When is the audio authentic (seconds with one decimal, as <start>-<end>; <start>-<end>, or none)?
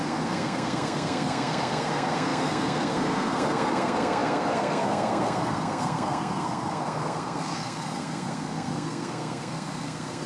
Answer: none